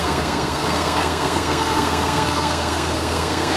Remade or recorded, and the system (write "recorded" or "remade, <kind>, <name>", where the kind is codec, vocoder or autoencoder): remade, codec, SNAC